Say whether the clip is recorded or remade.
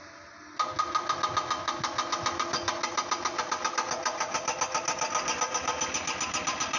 recorded